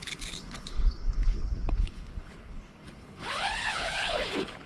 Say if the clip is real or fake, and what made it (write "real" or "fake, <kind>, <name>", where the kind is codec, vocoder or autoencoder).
fake, codec, HILCodec